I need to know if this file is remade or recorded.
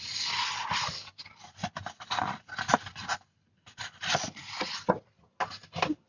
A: recorded